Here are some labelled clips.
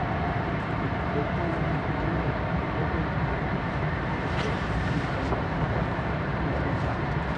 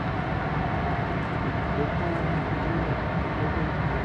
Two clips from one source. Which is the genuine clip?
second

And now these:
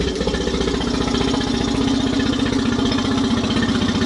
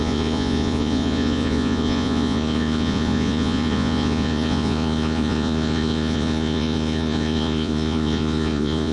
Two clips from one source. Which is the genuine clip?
first